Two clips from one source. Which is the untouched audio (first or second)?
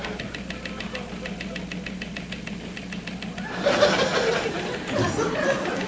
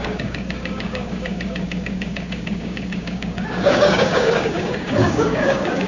first